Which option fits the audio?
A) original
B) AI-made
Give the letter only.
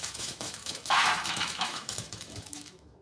B